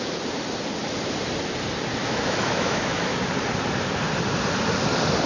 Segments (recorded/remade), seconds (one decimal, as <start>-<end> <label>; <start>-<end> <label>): 0.0-2.0 recorded; 2.0-3.2 remade; 3.2-5.3 recorded